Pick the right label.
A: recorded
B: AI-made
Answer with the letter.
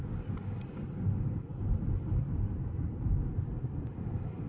A